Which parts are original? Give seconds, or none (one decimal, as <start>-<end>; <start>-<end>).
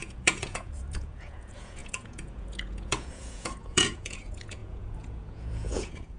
none